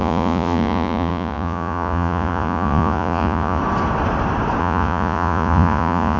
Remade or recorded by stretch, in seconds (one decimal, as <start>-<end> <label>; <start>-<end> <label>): 0.0-3.6 remade; 3.6-4.6 recorded; 4.6-6.2 remade